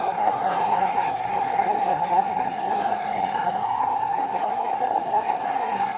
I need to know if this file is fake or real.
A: fake